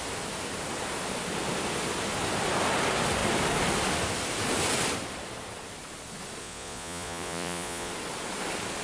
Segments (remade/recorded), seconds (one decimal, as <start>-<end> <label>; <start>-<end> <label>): 0.0-6.4 recorded; 6.4-7.9 remade; 7.9-8.8 recorded